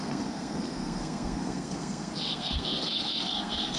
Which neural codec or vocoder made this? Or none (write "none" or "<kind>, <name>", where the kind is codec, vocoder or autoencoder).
codec, SNAC